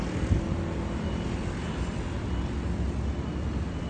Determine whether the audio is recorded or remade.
recorded